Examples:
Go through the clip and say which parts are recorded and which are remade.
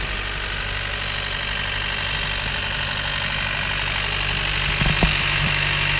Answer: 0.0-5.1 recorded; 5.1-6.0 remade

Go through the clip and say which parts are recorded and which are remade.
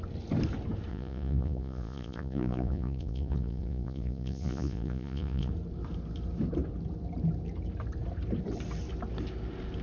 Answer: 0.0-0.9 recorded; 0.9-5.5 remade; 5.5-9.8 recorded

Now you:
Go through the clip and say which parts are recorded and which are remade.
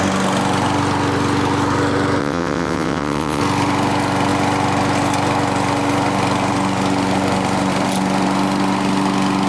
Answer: 0.0-2.2 recorded; 2.2-3.4 remade; 3.4-9.5 recorded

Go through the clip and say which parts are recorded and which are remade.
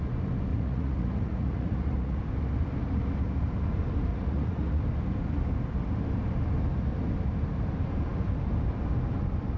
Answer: 0.0-0.5 recorded; 0.5-2.2 remade; 2.2-4.1 recorded; 4.1-4.8 remade; 4.8-9.6 recorded